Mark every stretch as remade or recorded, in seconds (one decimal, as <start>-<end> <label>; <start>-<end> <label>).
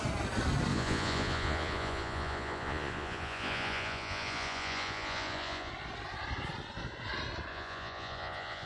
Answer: 0.0-0.7 recorded; 0.7-5.7 remade; 5.7-7.5 recorded; 7.5-8.7 remade